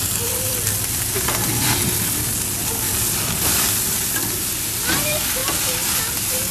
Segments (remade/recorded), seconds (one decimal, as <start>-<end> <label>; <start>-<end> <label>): 0.0-1.8 remade; 1.8-2.5 recorded; 2.5-5.4 remade; 5.4-6.0 recorded; 6.0-6.5 remade